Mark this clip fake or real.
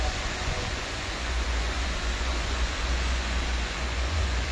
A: fake